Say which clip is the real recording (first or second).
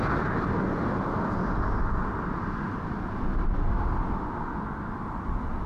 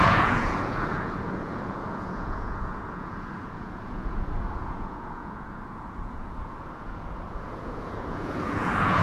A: first